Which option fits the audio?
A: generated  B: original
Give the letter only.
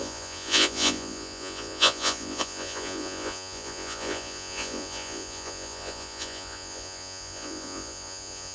A